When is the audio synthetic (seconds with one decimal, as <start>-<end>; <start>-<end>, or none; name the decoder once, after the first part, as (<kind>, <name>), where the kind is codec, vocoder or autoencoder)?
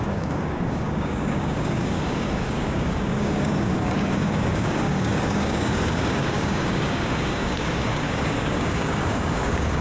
0.0-9.8 (codec, DAC)